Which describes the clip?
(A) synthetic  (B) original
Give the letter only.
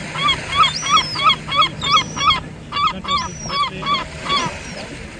B